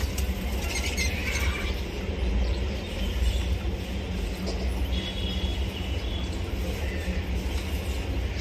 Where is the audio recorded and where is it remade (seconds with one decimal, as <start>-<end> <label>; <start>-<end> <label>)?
0.0-1.2 recorded; 1.2-3.3 remade; 3.3-8.4 recorded